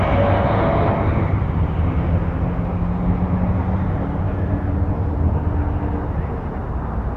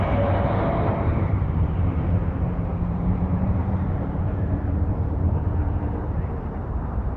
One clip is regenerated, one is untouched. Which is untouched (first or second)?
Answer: first